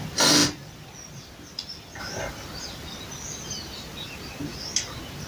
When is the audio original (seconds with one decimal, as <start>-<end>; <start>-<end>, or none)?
0.0-5.3